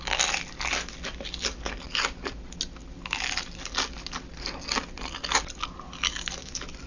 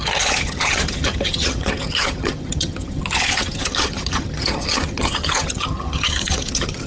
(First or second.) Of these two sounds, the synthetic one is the second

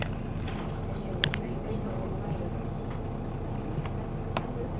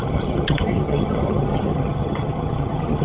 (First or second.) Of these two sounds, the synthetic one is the second